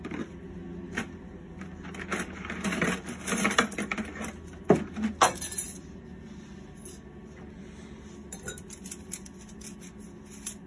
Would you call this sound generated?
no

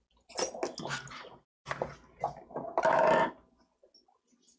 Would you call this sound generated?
no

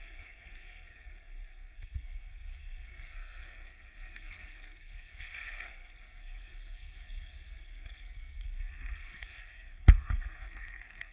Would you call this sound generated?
yes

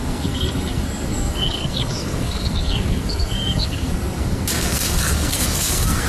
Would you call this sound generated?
yes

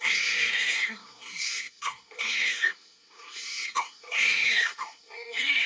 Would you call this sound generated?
yes